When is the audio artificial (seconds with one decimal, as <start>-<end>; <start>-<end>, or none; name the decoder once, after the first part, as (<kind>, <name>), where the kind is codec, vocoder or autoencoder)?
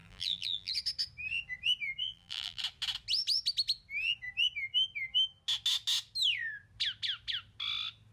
0.0-0.7 (vocoder, BigVGAN v2); 2.0-2.6